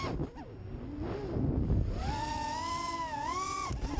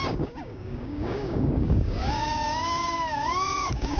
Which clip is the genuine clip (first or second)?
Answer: first